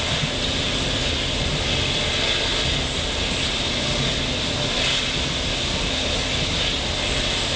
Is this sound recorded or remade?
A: recorded